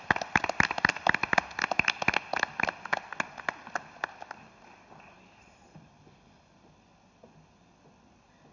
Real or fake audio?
real